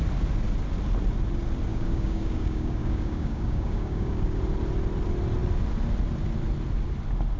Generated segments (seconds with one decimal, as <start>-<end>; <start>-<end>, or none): 1.7-4.4